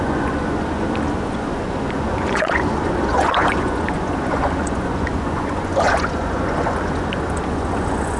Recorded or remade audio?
remade